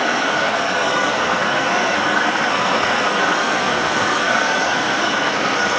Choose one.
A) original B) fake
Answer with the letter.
B